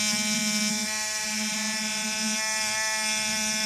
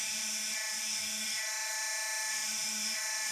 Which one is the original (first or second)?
first